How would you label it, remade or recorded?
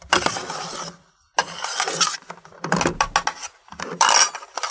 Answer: recorded